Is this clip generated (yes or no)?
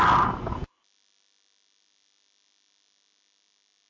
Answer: no